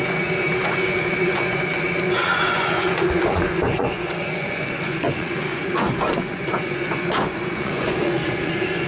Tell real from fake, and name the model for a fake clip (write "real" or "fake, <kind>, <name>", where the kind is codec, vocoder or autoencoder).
fake, vocoder, Vocos